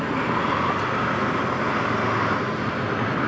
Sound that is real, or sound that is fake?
real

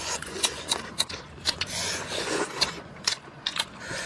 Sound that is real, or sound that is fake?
fake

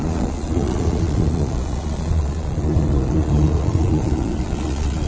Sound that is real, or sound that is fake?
fake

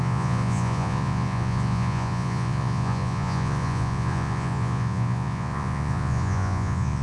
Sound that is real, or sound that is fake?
fake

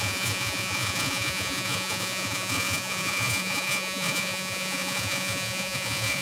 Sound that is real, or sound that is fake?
fake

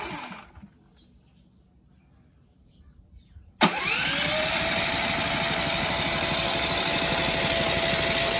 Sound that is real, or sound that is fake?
real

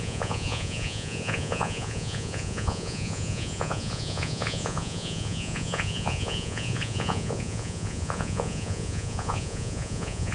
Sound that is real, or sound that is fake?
fake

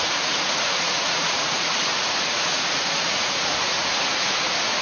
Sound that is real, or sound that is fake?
fake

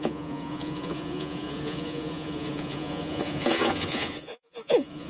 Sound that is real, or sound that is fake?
fake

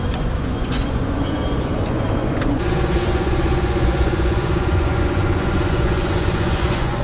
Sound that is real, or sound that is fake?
fake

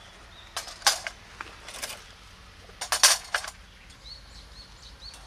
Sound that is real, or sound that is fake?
real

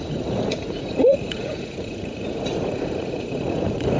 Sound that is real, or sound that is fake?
fake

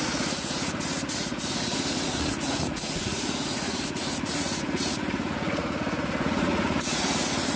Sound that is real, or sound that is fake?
fake